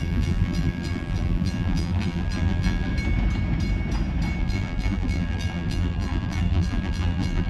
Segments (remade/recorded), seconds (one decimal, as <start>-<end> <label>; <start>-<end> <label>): 0.0-2.9 remade; 2.9-4.4 recorded; 4.4-7.5 remade